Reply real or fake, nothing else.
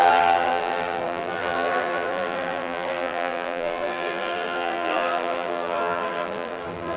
fake